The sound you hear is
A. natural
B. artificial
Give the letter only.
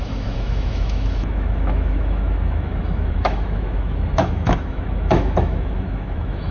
B